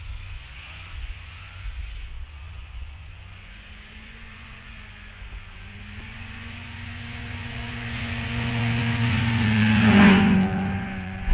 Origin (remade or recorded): remade